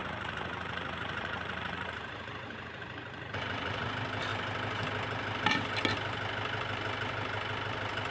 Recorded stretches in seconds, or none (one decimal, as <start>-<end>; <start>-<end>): 3.9-8.1